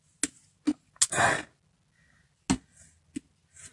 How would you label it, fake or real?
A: real